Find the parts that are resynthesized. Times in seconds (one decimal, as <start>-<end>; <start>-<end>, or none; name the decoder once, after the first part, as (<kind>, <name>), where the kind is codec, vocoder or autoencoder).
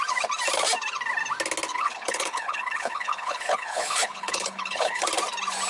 1.7-5.0 (codec, HILCodec)